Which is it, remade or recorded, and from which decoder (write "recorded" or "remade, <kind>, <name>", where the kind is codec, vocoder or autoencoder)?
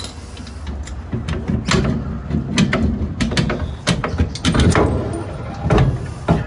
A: recorded